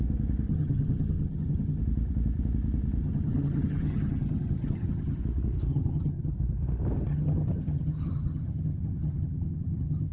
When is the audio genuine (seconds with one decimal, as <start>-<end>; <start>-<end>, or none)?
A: 0.0-0.5; 1.8-3.0; 5.2-5.7; 6.3-7.1